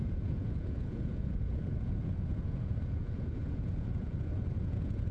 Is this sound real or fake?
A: fake